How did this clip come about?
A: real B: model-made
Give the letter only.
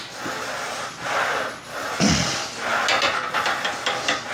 A